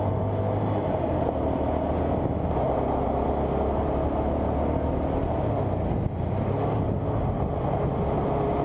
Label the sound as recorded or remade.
recorded